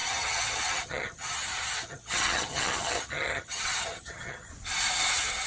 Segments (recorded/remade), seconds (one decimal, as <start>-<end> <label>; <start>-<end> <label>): 0.0-4.5 remade; 4.5-5.1 recorded; 5.1-5.5 remade